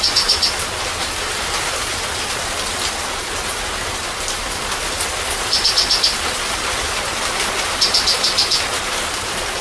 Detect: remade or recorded recorded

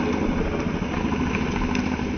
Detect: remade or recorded recorded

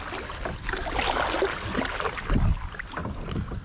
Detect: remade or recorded recorded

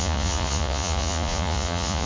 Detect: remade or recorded remade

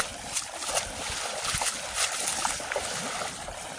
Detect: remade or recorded recorded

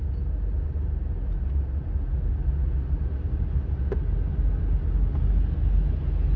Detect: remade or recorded recorded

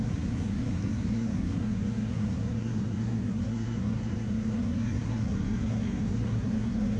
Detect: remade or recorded remade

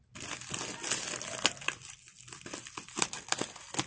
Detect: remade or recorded recorded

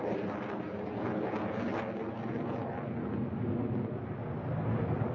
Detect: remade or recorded recorded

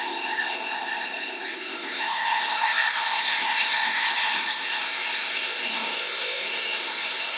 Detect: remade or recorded remade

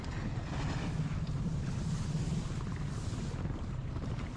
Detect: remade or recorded remade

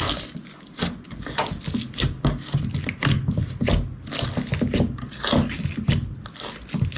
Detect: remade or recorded recorded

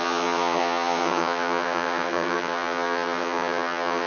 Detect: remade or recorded remade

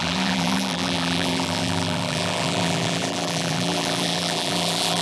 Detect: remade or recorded remade